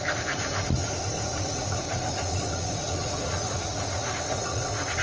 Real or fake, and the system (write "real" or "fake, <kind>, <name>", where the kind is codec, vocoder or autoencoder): fake, vocoder, Vocos